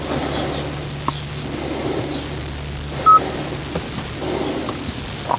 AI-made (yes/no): no